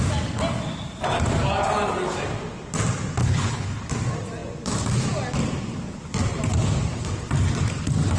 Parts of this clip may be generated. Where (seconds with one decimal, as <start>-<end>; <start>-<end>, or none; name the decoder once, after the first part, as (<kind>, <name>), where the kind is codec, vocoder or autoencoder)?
3.2-3.8 (codec, HILCodec)